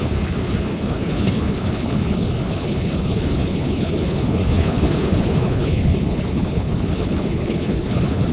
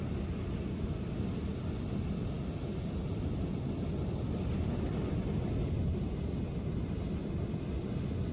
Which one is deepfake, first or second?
first